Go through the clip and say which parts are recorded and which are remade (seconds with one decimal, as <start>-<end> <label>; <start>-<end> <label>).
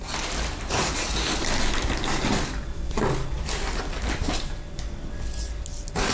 0.0-6.1 recorded